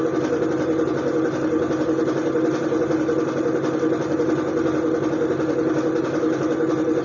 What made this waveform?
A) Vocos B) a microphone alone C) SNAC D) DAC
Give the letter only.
B